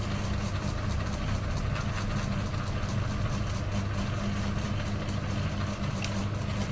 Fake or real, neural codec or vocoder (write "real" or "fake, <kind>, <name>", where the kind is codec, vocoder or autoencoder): real